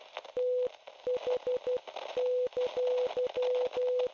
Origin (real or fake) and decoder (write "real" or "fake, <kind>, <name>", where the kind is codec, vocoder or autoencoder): real